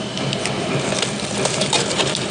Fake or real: real